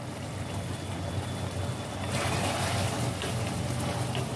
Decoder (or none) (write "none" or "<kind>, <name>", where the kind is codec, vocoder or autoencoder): none